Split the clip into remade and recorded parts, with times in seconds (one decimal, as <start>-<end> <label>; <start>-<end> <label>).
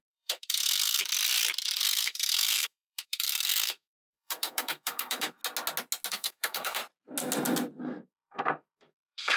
0.0-1.0 remade; 1.0-1.8 recorded; 1.8-5.4 remade; 5.4-6.1 recorded; 6.1-6.8 remade; 6.8-7.8 recorded; 7.8-9.4 remade